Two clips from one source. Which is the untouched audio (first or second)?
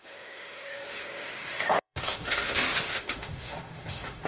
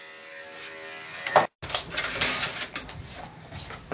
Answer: second